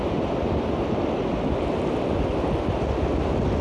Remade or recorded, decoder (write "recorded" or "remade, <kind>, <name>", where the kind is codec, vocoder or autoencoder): recorded